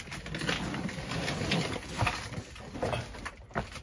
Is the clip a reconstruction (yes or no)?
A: no